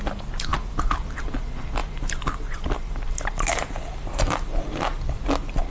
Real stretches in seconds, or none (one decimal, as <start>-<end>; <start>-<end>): 0.0-5.7